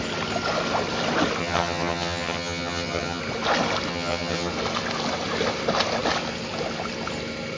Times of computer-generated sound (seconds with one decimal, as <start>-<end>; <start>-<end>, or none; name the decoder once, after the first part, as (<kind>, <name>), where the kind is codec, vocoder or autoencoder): 1.4-3.2 (vocoder, HiFi-GAN); 3.9-4.5